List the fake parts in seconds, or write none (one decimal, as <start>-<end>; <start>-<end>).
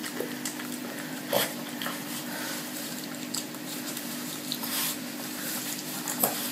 0.7-6.5